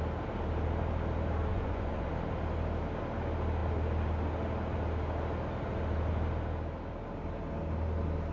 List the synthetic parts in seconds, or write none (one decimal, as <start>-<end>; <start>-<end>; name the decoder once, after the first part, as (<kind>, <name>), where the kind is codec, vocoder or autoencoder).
1.5-2.1 (vocoder, Vocos)